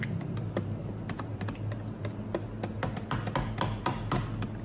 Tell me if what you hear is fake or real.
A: real